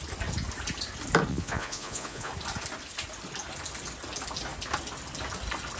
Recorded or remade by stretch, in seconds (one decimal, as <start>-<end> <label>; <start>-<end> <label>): 0.0-1.3 recorded; 1.3-2.3 remade; 2.3-5.8 recorded